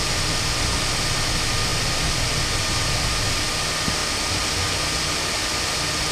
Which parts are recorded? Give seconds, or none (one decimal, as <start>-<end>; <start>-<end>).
0.0-6.1

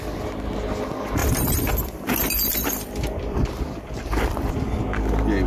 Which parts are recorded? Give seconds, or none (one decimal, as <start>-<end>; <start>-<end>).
0.0-1.2; 4.5-5.5

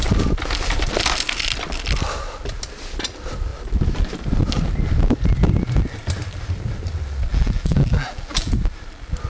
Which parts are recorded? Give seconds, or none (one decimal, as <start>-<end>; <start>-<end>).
0.0-7.3; 8.5-9.3

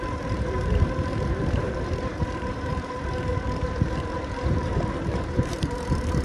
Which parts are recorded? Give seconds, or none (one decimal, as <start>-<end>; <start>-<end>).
none

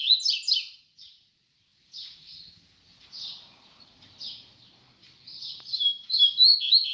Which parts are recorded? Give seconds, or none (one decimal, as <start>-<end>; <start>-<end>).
0.0-1.7; 2.4-5.0; 6.2-6.9